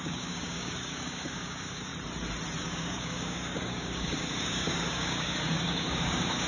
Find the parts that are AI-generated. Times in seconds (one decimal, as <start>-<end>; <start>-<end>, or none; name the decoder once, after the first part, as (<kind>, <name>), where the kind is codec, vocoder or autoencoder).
0.0-1.9 (codec, DAC); 2.6-6.5